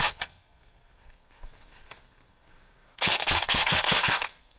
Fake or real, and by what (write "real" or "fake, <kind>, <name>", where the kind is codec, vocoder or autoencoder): fake, codec, SNAC